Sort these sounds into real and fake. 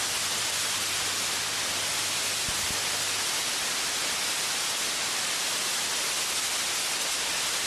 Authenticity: real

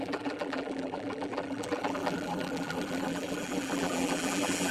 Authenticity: fake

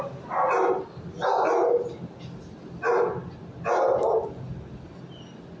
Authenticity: real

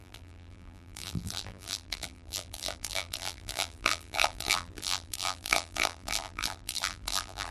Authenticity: fake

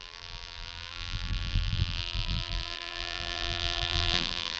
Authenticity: fake